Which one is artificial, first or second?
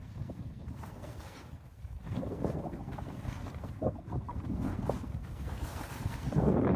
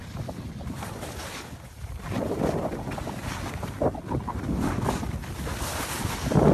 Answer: first